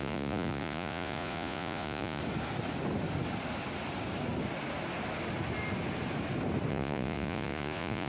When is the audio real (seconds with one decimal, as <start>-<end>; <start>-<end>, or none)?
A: 2.2-6.7